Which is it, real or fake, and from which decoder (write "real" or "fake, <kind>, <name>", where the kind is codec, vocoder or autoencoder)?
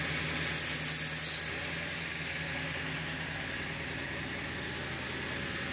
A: real